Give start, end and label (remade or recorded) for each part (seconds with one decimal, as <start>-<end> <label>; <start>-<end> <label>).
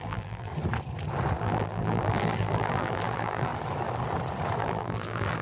0.0-0.5 remade; 0.5-1.4 recorded; 1.4-3.5 remade; 3.5-4.6 recorded; 4.6-5.4 remade